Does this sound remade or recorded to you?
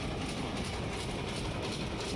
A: recorded